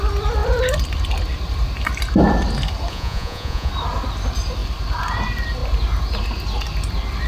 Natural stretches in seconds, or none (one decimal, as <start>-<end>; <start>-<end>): 0.0-2.9; 3.7-7.3